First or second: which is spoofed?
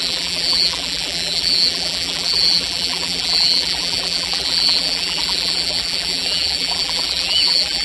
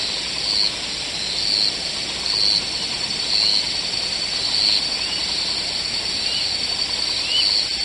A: first